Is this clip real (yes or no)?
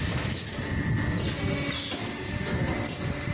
yes